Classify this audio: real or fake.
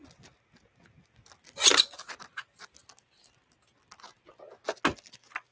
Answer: real